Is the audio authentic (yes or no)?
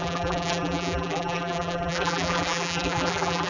no